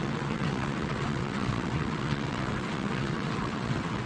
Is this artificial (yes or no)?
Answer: yes